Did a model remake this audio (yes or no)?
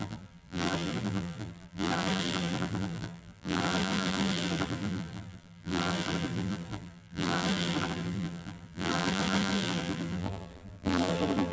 yes